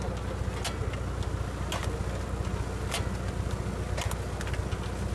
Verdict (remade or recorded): recorded